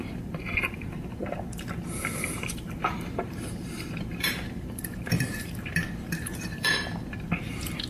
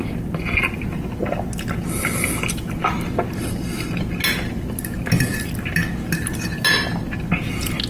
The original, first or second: second